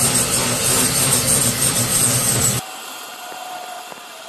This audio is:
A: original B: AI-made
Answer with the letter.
A